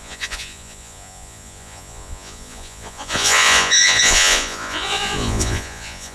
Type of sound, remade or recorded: remade